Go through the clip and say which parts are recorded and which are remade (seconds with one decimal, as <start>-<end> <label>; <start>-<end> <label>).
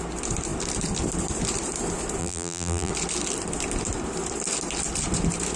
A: 0.0-2.2 recorded; 2.2-2.9 remade; 2.9-5.6 recorded